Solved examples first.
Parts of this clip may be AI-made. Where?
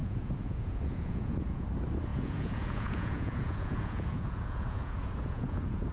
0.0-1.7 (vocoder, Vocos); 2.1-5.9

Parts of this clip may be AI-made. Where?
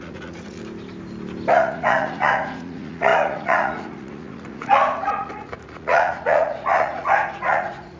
0.0-0.6 (vocoder, Vocos); 1.5-8.0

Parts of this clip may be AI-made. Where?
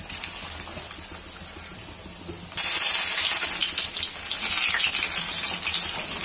none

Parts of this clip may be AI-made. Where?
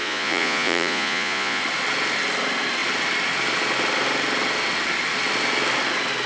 0.0-1.6 (vocoder, Vocos)